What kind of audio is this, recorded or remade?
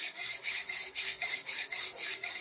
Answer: remade